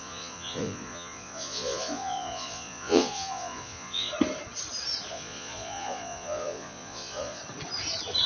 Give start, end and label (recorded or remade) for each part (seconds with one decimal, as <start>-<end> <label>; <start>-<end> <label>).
0.0-4.1 remade; 4.1-5.1 recorded; 5.1-7.4 remade; 7.4-8.3 recorded